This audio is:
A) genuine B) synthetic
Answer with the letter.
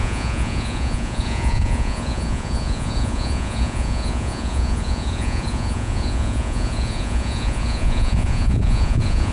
B